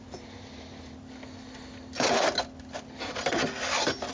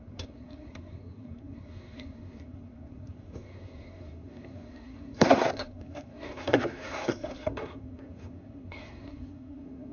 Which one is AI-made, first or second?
second